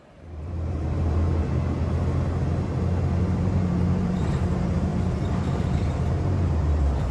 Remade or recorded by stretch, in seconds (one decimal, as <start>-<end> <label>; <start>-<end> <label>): 0.0-1.4 remade; 1.4-3.2 recorded; 3.2-7.1 remade